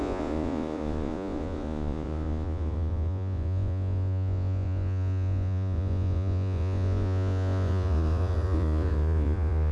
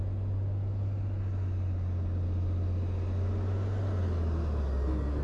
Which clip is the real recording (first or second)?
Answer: second